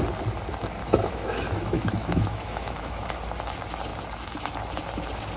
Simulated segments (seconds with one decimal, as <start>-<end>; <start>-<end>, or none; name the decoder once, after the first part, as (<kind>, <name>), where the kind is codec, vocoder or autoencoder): 0.8-3.1 (autoencoder, DAC-VAE)